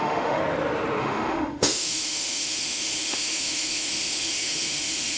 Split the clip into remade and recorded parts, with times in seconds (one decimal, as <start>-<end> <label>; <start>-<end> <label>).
0.0-0.4 remade; 0.4-1.0 recorded; 1.0-5.2 remade